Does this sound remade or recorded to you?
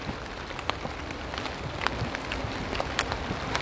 recorded